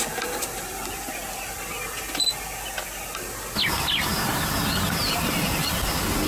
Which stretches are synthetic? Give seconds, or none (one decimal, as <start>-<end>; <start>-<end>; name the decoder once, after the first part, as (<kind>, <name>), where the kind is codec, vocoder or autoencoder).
none